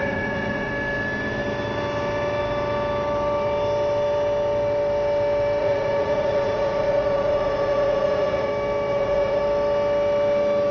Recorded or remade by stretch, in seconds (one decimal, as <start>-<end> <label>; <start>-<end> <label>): 0.0-0.7 remade; 0.7-5.6 recorded; 5.6-8.5 remade; 8.5-8.9 recorded; 8.9-9.4 remade; 9.4-10.7 recorded